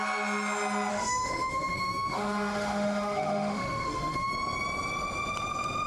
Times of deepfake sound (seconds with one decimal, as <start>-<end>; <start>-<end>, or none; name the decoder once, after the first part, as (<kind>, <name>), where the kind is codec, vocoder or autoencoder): 0.9-4.3 (autoencoder, DAC-VAE)